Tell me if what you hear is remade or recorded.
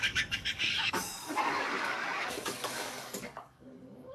remade